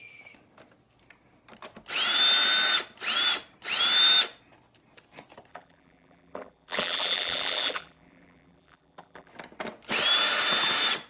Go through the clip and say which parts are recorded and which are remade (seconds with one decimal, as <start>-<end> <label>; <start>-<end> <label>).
0.0-5.5 recorded; 5.5-9.3 remade; 9.3-11.1 recorded